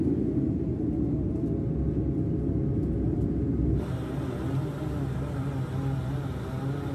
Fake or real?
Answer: real